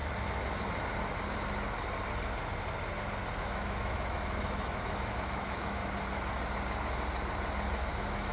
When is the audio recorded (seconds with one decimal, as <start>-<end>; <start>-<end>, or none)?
0.0-3.4; 5.8-7.9